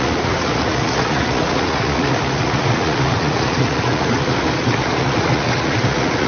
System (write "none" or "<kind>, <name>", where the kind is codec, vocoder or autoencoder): vocoder, Vocos